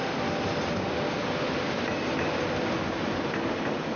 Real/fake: real